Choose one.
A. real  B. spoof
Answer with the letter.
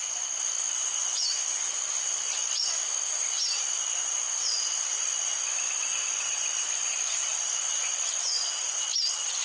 A